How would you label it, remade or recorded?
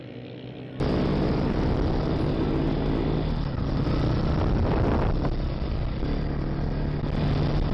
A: recorded